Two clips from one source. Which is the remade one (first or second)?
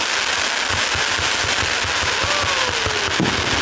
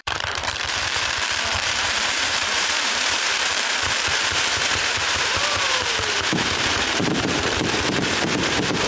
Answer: second